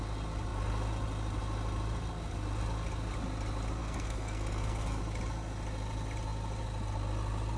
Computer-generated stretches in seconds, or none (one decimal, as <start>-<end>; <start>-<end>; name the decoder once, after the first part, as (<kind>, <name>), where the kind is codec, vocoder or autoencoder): 3.8-5.0 (codec, SNAC)